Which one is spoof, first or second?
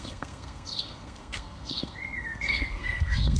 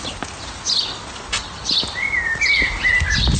first